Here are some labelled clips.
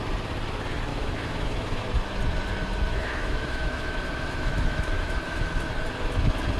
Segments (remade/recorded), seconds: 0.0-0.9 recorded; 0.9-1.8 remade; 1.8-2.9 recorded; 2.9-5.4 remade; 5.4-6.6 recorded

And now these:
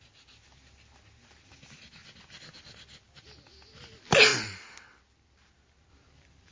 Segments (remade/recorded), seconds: 0.0-6.5 recorded

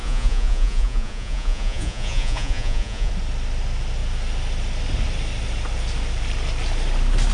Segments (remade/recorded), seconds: 0.0-3.1 remade; 3.1-7.3 recorded

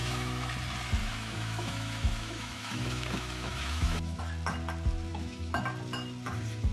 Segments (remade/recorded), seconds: 0.0-0.5 remade; 0.5-1.0 recorded; 1.0-4.2 remade; 4.2-5.1 recorded; 5.1-5.6 remade; 5.6-6.7 recorded